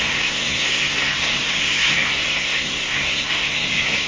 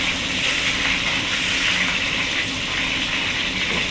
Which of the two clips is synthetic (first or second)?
first